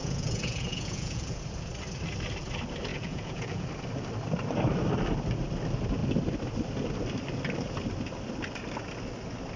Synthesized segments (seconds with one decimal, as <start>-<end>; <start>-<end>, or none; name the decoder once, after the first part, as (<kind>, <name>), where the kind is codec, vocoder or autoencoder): 0.0-1.4 (vocoder, Vocos); 2.9-3.7